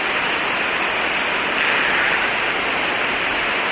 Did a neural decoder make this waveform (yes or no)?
no